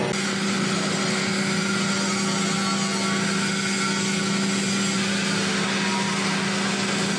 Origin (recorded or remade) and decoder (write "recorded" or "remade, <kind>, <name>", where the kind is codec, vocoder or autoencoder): recorded